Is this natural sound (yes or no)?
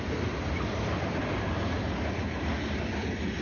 yes